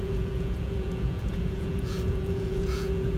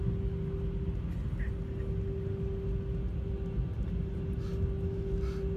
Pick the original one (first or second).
second